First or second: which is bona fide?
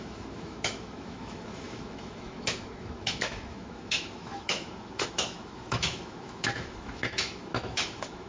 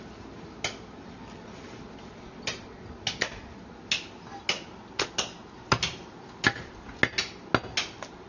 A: second